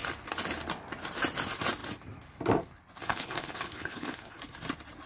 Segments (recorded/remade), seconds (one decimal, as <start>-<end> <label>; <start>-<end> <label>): 0.0-3.1 recorded; 3.1-4.4 remade; 4.4-5.1 recorded